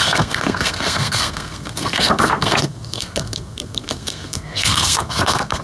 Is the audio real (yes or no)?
no